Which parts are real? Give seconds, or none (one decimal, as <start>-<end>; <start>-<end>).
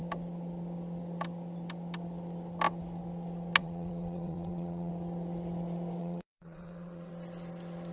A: 0.0-3.6; 4.9-6.0; 7.1-7.9